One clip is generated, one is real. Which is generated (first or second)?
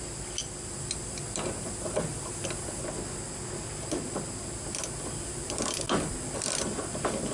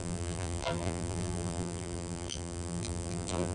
second